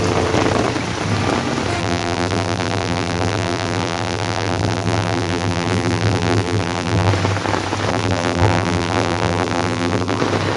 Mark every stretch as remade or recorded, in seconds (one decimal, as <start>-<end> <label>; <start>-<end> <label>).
0.0-1.8 recorded; 1.8-7.1 remade; 7.1-7.9 recorded; 7.9-10.2 remade; 10.2-10.6 recorded